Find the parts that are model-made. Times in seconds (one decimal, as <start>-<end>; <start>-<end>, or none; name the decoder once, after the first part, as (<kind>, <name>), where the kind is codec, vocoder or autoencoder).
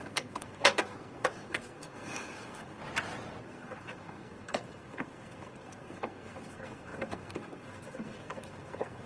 0.0-2.8 (codec, SNAC); 3.4-9.1